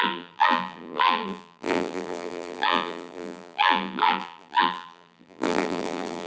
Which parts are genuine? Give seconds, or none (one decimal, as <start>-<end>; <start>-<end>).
none